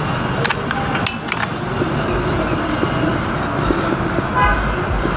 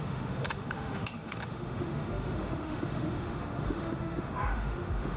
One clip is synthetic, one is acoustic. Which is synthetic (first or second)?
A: second